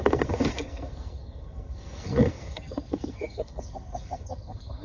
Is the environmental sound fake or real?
fake